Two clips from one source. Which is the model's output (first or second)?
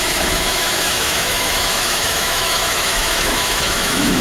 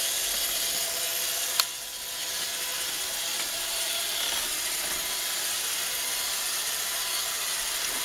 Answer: first